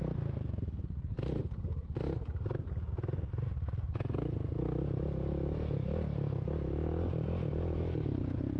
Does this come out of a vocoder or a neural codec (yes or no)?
no